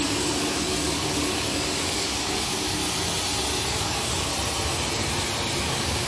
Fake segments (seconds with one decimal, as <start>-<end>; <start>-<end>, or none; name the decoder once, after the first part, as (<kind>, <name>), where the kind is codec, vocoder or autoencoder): 0.0-2.8 (codec, DAC); 3.7-4.3; 5.6-6.1